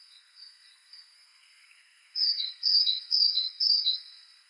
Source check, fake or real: fake